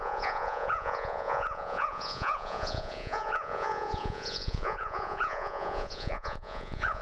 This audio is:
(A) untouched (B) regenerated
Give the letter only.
B